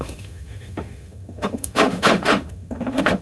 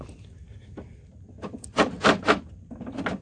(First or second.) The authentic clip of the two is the second